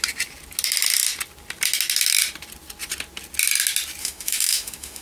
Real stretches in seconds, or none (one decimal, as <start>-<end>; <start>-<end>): 0.0-4.0